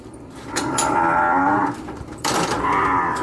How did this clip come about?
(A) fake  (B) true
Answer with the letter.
A